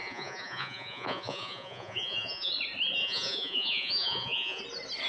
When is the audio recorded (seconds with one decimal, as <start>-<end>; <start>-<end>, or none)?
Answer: 2.5-3.0; 4.6-5.1